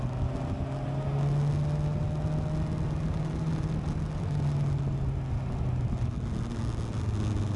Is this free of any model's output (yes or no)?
yes